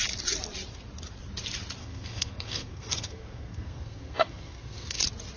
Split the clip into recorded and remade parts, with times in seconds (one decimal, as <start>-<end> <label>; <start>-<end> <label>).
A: 0.0-1.8 recorded; 1.8-5.0 remade; 5.0-5.4 recorded